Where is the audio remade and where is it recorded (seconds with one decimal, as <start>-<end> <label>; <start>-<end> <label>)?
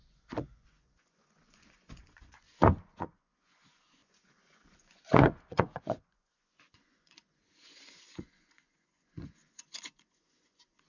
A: 0.0-10.9 remade